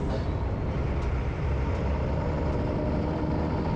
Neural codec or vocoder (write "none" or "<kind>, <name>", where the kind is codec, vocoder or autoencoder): vocoder, BigVGAN v2